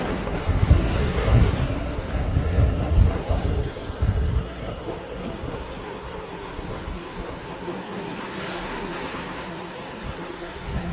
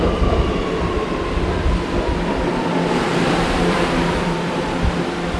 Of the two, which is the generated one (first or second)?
first